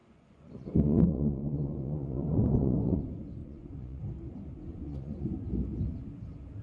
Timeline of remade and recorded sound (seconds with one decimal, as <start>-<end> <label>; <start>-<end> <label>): 0.0-3.0 remade; 3.0-3.4 recorded; 3.4-4.0 remade; 4.0-4.7 recorded; 4.7-5.3 remade; 5.3-6.6 recorded